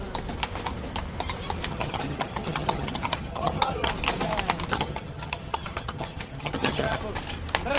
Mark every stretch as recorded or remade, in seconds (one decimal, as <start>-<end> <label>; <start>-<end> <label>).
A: 0.0-1.7 recorded; 1.7-3.9 remade; 3.9-4.7 recorded; 4.7-7.0 remade; 7.0-7.8 recorded